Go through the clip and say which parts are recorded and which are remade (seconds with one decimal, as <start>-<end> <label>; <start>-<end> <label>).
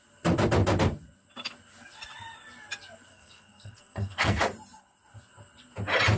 0.0-3.1 recorded; 3.1-4.4 remade; 4.4-6.2 recorded